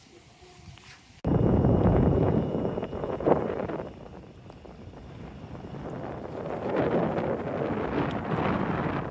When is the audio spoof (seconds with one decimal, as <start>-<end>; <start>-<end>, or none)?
1.3-3.3